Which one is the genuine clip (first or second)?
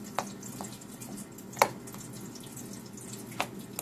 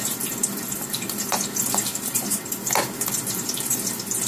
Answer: first